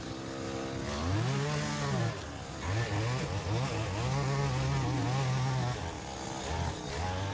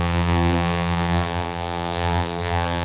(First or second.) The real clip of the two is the first